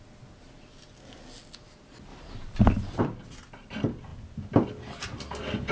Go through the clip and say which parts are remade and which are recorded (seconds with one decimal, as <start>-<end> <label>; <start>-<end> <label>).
0.0-2.1 recorded; 2.1-3.0 remade; 3.0-5.7 recorded